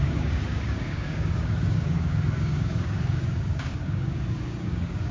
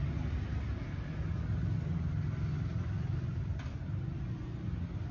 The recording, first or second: second